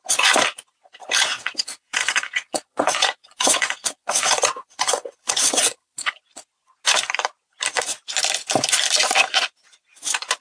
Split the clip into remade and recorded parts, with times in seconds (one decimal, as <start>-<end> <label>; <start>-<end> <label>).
0.0-1.3 recorded; 1.3-6.1 remade; 6.1-10.4 recorded